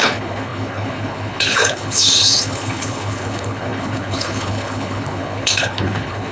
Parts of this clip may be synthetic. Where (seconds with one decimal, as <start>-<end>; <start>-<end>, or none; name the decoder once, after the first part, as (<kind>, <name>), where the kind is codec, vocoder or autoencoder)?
0.0-6.3 (codec, HILCodec)